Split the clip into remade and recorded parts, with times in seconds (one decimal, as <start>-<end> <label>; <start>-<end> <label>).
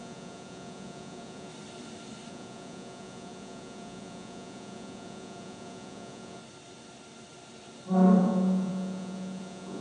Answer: 0.0-1.5 remade; 1.5-2.3 recorded; 2.3-6.4 remade; 6.4-8.2 recorded; 8.2-9.8 remade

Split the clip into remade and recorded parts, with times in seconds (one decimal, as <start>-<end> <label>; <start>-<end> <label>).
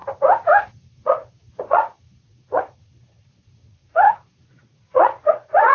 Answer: 0.0-0.6 recorded; 0.6-5.7 remade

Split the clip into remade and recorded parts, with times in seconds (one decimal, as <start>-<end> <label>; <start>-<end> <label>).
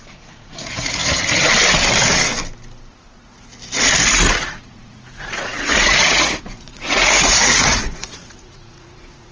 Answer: 0.0-1.0 remade; 1.0-2.9 recorded; 2.9-3.5 remade; 3.5-4.4 recorded; 4.4-9.3 remade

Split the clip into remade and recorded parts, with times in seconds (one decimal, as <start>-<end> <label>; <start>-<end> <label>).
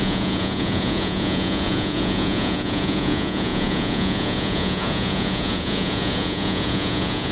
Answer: 0.0-7.3 remade